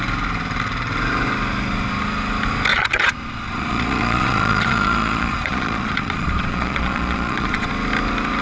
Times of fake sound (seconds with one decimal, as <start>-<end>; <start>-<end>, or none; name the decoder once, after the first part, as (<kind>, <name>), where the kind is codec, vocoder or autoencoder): 2.7-7.7 (vocoder, Vocos)